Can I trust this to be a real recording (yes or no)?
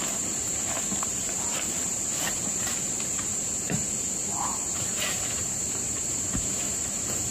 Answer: no